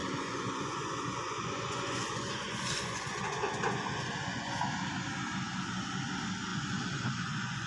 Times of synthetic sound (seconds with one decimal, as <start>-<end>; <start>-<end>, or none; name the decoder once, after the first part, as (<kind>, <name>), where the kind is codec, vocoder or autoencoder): 0.0-4.6 (vocoder, Vocos); 6.5-7.7